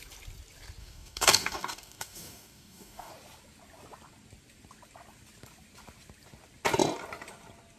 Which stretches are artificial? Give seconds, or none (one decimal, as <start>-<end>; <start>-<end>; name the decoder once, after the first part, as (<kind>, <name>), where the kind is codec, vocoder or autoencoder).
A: 0.8-3.1 (codec, DAC)